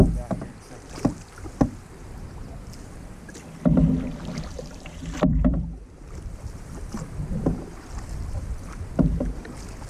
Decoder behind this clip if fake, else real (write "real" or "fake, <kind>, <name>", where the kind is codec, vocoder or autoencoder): fake, vocoder, BigVGAN v2